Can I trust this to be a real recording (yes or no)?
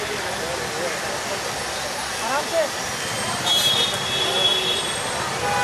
yes